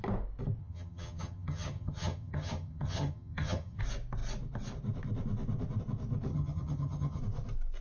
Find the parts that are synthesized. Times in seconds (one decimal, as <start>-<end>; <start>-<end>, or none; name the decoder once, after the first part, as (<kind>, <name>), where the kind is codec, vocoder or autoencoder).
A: 0.6-3.8 (vocoder, HiFi-GAN); 6.3-7.2

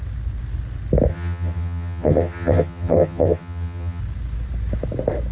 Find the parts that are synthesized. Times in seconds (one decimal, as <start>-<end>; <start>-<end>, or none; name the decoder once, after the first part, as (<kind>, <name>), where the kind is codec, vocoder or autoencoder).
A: 1.1-4.0 (vocoder, HiFi-GAN)

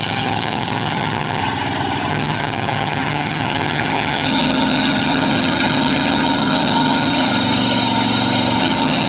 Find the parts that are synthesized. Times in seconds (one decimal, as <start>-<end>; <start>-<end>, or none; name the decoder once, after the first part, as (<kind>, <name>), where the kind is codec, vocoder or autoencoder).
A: 0.0-1.4 (vocoder, HiFi-GAN); 2.1-7.3; 8.6-9.1

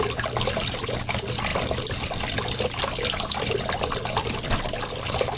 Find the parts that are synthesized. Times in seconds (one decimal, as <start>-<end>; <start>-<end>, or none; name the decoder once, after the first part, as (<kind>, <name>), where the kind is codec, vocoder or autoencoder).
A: none

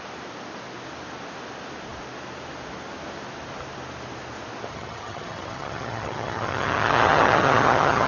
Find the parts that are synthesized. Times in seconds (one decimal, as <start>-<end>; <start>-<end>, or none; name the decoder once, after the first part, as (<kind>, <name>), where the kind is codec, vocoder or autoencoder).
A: 4.7-8.1 (vocoder, HiFi-GAN)

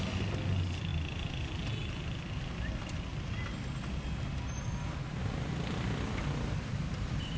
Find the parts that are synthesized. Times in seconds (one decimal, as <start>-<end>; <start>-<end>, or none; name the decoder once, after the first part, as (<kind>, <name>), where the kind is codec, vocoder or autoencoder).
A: none